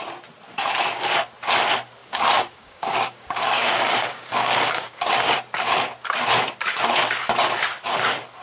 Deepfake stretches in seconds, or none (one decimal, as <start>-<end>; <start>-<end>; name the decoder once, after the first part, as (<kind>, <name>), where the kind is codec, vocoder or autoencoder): 2.0-5.1 (codec, DAC)